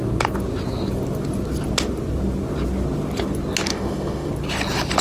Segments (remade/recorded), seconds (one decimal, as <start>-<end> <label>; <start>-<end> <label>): 0.0-3.7 recorded; 3.7-4.3 remade; 4.3-5.0 recorded